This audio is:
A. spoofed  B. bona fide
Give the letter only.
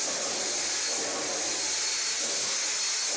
B